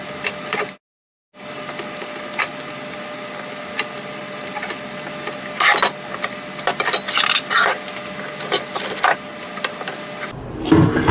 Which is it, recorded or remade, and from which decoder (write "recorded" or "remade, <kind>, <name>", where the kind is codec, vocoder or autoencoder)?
recorded